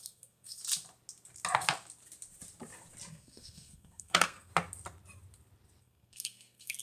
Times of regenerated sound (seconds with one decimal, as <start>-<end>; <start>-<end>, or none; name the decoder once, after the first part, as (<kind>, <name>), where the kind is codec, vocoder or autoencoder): 0.0-0.6 (codec, SNAC); 3.1-4.5; 5.8-6.8